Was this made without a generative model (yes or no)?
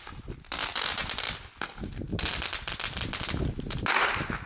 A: yes